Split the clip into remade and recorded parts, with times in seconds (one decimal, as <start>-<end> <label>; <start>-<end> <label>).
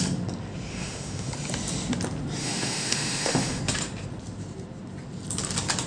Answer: 0.0-0.7 recorded; 0.7-1.3 remade; 1.3-2.4 recorded; 2.4-3.6 remade; 3.6-5.9 recorded